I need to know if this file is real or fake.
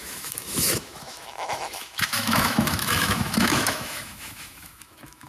fake